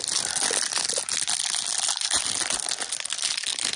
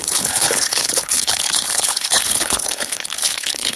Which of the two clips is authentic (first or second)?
first